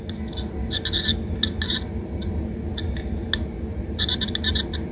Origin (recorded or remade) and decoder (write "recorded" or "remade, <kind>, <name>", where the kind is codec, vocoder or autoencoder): recorded